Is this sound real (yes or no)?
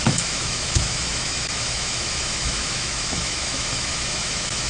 no